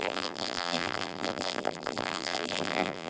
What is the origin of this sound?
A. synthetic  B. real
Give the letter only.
A